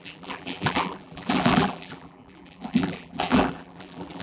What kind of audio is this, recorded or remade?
remade